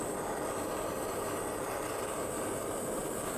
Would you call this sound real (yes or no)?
yes